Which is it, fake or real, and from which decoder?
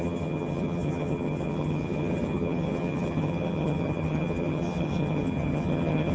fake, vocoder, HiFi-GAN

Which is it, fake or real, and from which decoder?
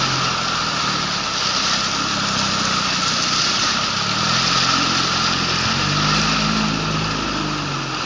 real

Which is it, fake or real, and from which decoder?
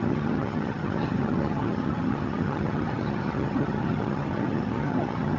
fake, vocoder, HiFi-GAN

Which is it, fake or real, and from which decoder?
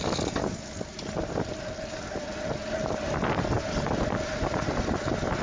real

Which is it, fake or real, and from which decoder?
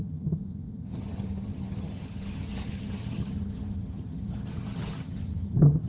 fake, vocoder, HiFi-GAN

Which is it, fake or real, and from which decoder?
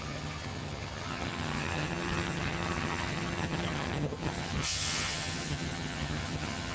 fake, vocoder, HiFi-GAN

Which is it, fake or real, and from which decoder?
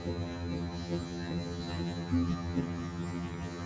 fake, vocoder, HiFi-GAN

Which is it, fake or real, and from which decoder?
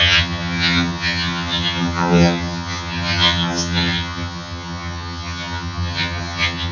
fake, vocoder, HiFi-GAN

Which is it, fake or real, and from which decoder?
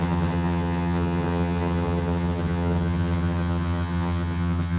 fake, vocoder, HiFi-GAN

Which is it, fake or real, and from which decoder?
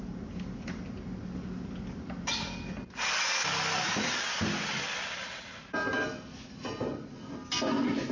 real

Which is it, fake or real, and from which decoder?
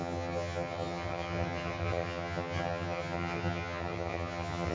fake, vocoder, HiFi-GAN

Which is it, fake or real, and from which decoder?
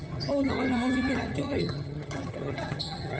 fake, vocoder, HiFi-GAN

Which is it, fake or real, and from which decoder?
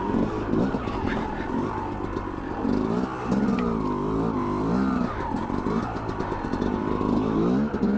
real